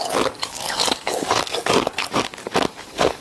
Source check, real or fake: fake